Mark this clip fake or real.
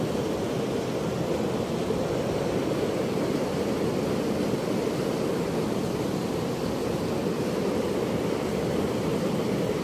real